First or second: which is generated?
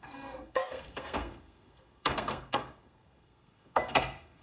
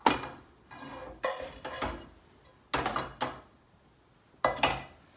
first